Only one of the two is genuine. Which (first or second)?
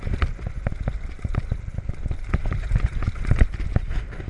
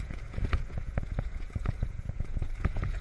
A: first